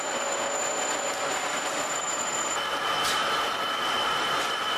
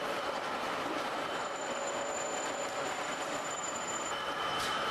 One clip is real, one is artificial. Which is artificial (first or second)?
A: second